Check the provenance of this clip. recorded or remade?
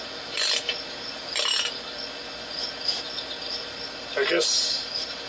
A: recorded